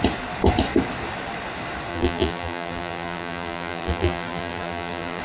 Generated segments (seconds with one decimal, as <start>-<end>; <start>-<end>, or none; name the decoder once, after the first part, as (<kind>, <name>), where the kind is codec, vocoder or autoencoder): 1.9-5.2 (vocoder, BigVGAN v2)